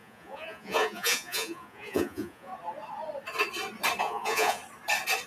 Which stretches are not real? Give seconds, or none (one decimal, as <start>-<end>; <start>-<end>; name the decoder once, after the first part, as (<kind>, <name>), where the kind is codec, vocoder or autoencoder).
0.0-2.5 (vocoder, Vocos); 4.0-4.6

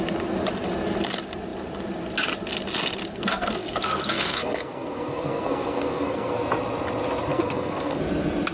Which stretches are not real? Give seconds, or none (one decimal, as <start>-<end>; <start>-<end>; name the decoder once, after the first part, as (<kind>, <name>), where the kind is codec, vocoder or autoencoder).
3.1-6.4 (codec, SNAC); 7.3-8.0

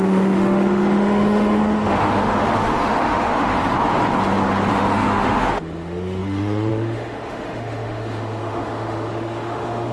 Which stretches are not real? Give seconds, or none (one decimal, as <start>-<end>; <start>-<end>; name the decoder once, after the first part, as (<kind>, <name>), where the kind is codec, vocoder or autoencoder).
0.0-3.6 (autoencoder, DAC-VAE); 4.7-9.9

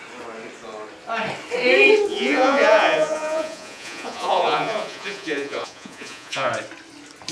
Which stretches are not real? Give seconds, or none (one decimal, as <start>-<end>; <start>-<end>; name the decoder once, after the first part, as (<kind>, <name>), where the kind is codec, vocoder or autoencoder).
2.1-6.5 (vocoder, Vocos)

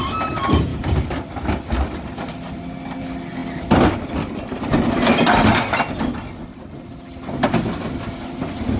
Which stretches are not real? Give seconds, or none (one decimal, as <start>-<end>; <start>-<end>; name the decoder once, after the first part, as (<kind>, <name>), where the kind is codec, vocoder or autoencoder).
none